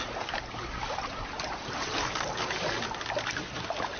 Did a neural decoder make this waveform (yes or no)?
no